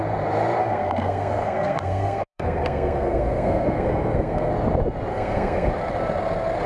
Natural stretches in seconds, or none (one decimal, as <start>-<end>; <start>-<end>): 0.0-0.6; 4.5-5.1; 5.7-6.7